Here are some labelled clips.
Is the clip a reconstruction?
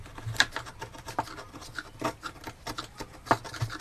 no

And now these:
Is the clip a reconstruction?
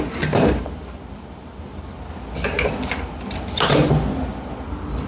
yes